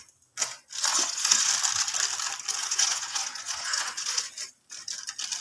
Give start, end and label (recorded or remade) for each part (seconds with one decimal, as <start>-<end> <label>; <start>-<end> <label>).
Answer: 0.0-0.9 recorded; 0.9-1.5 remade; 1.5-2.6 recorded; 2.6-4.3 remade; 4.3-5.4 recorded